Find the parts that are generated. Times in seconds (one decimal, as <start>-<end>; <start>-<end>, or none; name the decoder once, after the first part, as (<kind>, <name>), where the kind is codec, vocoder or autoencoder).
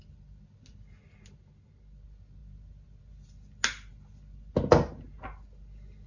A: none